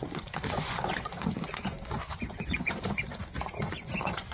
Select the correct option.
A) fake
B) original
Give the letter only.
A